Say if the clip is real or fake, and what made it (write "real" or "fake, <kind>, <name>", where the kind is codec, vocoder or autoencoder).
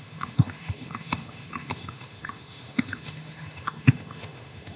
fake, autoencoder, DAC-VAE